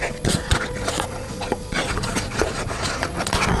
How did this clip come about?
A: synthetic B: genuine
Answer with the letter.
A